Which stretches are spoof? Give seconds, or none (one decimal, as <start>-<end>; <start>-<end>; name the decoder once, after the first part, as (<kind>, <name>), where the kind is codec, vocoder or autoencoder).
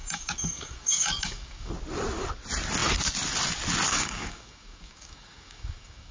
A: 0.0-1.7 (codec, DAC); 3.9-6.1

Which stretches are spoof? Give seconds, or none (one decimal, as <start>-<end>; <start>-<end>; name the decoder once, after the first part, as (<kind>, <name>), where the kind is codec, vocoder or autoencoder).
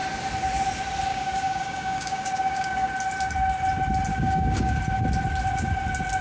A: 1.1-2.9 (codec, DAC); 4.1-4.7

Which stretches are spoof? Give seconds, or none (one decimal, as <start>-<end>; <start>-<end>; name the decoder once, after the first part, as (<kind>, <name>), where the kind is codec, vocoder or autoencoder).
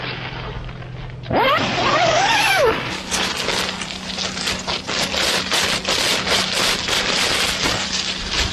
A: 1.9-3.3 (codec, DAC)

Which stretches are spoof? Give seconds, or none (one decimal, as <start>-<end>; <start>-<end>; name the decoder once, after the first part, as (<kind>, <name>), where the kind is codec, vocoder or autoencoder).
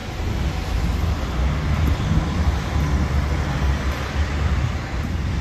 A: none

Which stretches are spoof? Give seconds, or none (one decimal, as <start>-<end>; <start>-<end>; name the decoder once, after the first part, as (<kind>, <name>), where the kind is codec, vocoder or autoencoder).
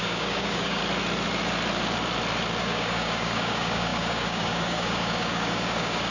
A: 0.0-0.8 (codec, DAC); 2.6-6.1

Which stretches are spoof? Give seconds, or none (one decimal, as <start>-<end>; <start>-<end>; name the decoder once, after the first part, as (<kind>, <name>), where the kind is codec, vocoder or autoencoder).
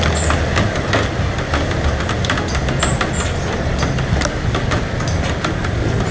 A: none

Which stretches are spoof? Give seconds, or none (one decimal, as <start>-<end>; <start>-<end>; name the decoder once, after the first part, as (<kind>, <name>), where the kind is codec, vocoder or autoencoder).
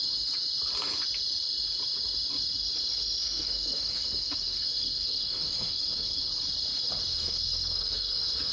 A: 3.2-6.3 (codec, DAC); 7.1-8.5